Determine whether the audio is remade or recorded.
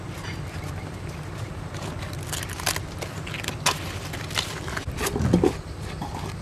recorded